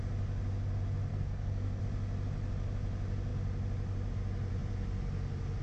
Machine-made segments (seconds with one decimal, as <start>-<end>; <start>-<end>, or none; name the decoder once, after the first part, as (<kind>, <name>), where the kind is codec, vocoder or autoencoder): 1.1-1.8 (codec, SNAC)